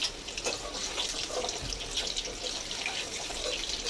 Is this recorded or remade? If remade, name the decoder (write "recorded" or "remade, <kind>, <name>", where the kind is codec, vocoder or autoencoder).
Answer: recorded